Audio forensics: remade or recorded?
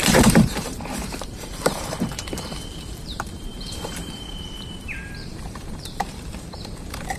remade